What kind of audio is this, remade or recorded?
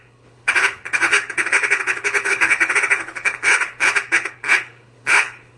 remade